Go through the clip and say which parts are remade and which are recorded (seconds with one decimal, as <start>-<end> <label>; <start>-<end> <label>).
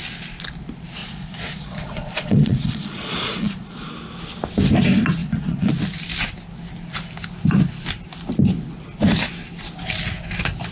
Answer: 0.0-1.0 recorded; 1.0-3.9 remade; 3.9-5.2 recorded; 5.2-5.7 remade; 5.7-10.7 recorded